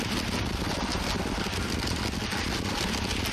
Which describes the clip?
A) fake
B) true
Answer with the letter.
B